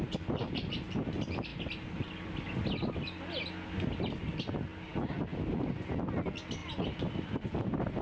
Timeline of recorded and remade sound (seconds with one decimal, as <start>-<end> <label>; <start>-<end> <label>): 0.0-8.0 recorded